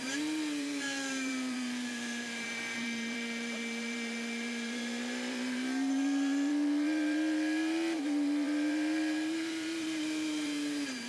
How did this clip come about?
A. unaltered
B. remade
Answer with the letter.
B